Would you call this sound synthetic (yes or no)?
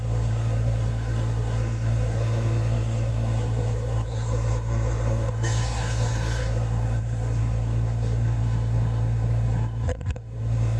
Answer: yes